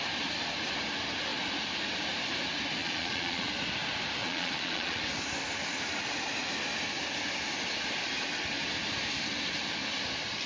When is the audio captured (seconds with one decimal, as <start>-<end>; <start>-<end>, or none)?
0.0-2.8; 3.5-4.2; 5.0-10.5